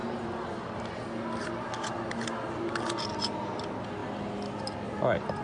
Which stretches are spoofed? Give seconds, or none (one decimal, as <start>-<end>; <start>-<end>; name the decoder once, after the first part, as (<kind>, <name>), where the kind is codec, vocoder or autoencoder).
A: none